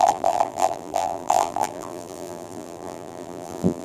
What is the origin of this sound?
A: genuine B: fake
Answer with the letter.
B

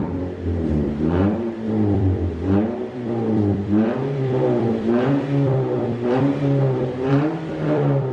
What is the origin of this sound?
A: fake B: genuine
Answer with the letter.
A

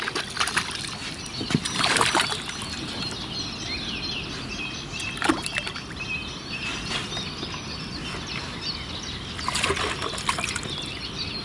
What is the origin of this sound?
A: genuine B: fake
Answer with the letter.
A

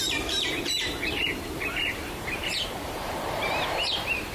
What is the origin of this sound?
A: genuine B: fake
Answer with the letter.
B